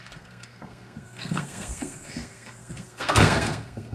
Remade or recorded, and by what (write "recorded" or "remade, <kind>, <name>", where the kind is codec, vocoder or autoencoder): remade, codec, SNAC